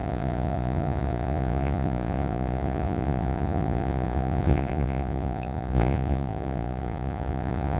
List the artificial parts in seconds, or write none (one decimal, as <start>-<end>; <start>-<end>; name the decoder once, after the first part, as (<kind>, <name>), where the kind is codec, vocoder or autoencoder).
0.0-7.8 (vocoder, Vocos)